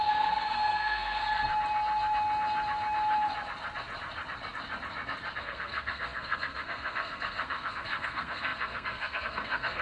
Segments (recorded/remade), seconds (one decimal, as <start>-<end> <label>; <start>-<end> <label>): 0.0-1.2 remade; 1.2-5.4 recorded; 5.4-9.8 remade